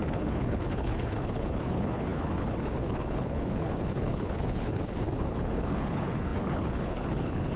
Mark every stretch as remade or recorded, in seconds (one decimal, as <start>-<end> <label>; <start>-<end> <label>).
0.0-7.6 remade